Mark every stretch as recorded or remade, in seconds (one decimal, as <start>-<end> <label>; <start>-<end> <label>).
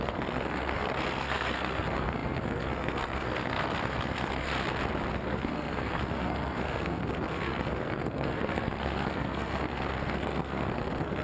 0.0-4.5 remade; 4.5-5.1 recorded; 5.1-11.2 remade